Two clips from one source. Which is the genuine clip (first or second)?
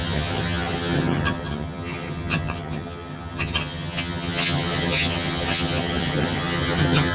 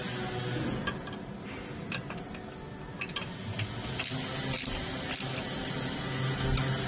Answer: second